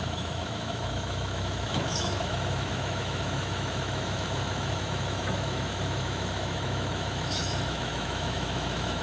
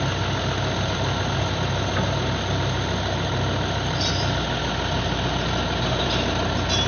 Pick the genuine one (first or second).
second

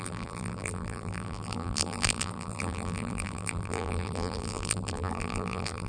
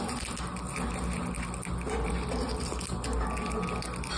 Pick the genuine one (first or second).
second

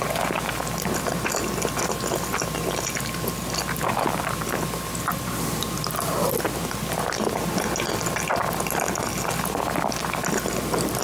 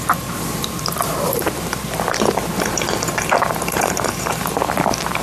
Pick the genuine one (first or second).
first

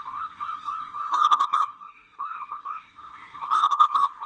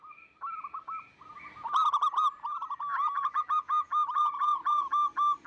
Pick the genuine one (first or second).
second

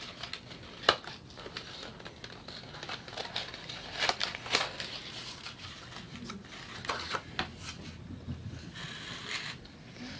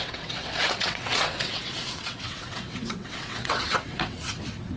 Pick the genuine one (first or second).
first